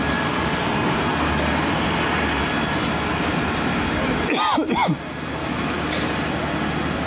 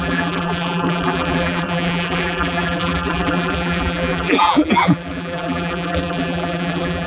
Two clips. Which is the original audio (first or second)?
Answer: first